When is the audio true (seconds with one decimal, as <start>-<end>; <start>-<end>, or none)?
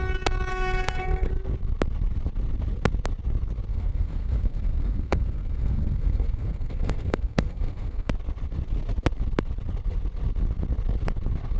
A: 0.0-0.5; 1.3-3.7; 8.1-11.6